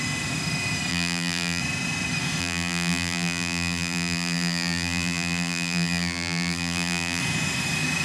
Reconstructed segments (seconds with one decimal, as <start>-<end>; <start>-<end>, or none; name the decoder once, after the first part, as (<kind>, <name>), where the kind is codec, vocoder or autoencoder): 0.9-1.6 (vocoder, BigVGAN v2); 2.4-7.2